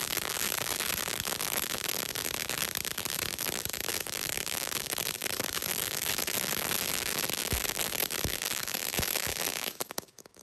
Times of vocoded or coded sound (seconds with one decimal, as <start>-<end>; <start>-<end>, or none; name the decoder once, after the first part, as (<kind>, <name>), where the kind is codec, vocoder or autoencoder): 0.0-2.6 (codec, DAC); 3.1-10.4